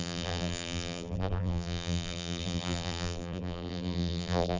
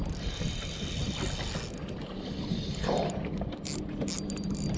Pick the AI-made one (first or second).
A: first